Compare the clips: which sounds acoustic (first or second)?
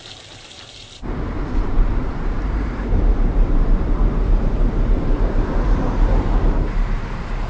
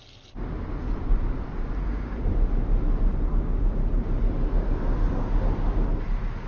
second